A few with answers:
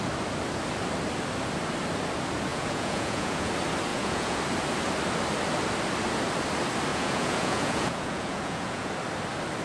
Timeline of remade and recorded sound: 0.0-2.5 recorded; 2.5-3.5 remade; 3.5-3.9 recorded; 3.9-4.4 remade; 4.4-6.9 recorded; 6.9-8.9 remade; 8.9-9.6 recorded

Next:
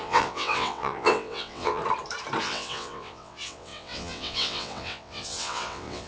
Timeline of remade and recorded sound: 0.0-1.8 remade; 1.8-2.4 recorded; 2.4-6.1 remade